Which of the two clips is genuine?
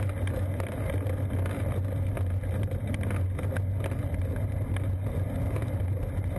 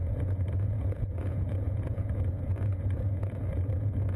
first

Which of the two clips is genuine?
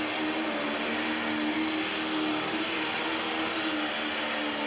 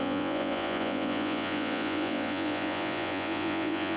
first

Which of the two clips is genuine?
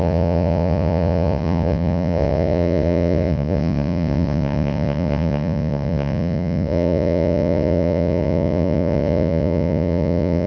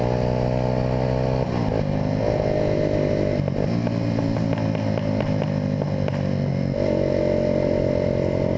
second